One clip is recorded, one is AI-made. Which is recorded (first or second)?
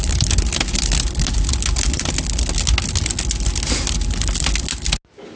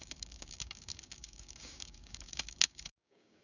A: first